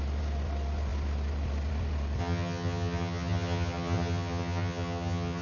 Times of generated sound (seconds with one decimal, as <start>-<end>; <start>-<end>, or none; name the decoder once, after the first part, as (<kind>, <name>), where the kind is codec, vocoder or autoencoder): 2.2-5.4 (vocoder, HiFi-GAN)